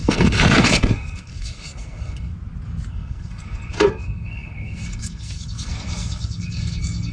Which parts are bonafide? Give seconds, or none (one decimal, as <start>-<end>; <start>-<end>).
2.3-2.9